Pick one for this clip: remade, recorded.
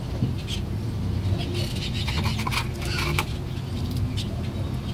recorded